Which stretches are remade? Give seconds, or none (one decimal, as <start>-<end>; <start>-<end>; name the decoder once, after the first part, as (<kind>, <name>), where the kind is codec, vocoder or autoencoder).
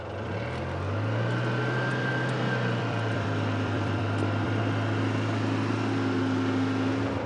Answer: 1.9-4.6 (vocoder, BigVGAN v2)